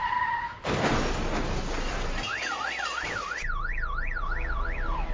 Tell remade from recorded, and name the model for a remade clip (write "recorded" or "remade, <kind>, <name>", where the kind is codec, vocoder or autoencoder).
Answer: recorded